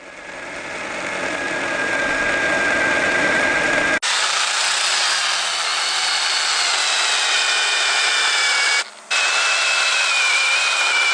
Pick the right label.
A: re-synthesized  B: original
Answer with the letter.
B